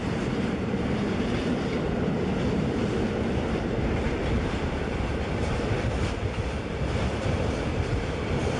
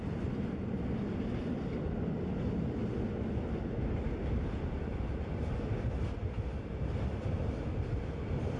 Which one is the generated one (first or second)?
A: first